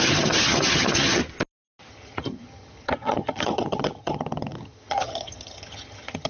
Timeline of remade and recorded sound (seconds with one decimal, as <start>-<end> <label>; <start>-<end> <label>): 0.0-1.2 remade; 1.2-1.9 recorded; 1.9-6.3 remade